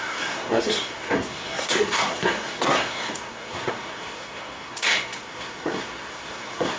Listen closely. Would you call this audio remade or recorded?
remade